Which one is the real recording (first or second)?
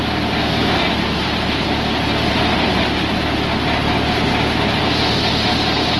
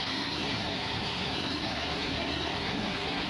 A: first